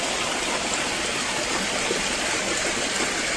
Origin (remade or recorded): recorded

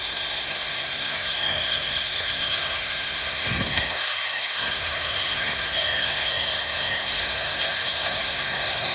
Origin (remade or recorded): remade